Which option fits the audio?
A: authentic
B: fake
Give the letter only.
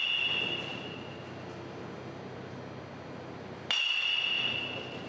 A